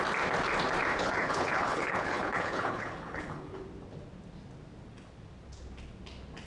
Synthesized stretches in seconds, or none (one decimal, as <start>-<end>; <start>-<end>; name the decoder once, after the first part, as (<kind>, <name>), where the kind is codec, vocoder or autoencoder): 0.9-3.6 (codec, HILCodec)